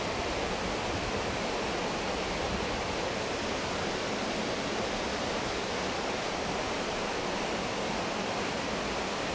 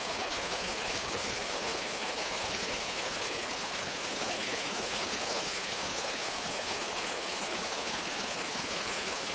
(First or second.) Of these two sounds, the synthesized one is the second